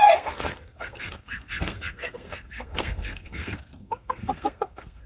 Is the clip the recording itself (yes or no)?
no